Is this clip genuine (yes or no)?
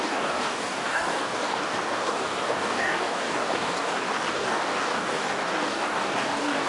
no